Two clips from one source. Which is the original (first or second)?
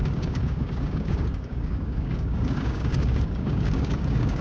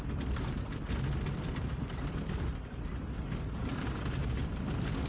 second